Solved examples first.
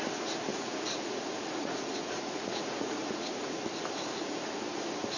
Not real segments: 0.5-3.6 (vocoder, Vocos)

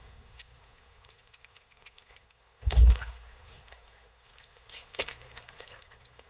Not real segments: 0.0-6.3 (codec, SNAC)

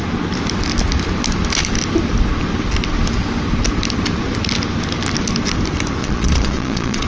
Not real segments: 6.0-7.1 (vocoder, Vocos)

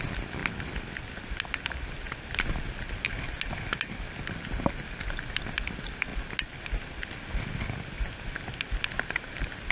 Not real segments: none

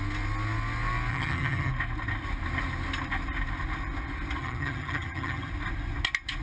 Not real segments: 1.1-1.7 (vocoder, HiFi-GAN); 4.4-5.5

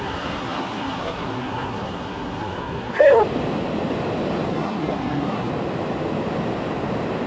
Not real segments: 0.0-3.2 (codec, SNAC); 4.5-5.5

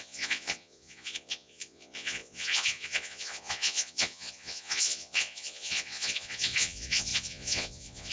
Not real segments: 0.0-8.1 (vocoder, Vocos)

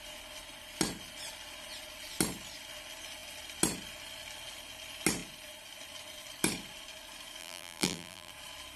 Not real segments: 7.4-8.3 (vocoder, BigVGAN v2)